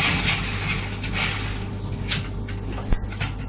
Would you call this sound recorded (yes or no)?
yes